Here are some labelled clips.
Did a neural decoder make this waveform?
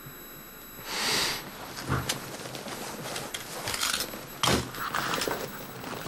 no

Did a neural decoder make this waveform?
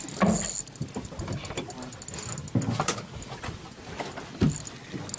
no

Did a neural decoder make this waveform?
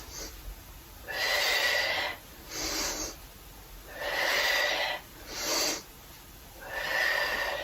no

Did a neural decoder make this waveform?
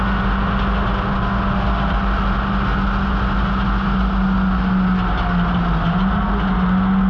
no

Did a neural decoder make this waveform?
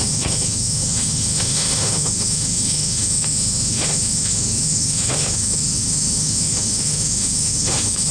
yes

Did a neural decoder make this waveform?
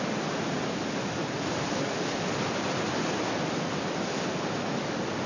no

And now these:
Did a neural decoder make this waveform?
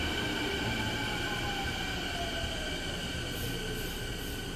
no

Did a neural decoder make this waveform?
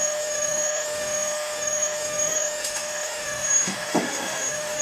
yes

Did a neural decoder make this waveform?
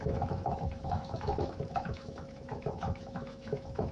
yes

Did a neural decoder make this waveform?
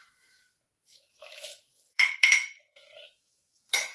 yes